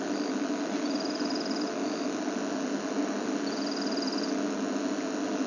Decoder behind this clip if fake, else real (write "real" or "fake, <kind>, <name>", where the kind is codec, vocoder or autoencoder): real